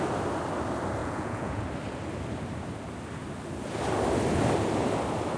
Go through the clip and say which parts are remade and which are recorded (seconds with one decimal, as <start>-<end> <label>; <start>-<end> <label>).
0.0-1.0 recorded; 1.0-1.6 remade; 1.6-5.4 recorded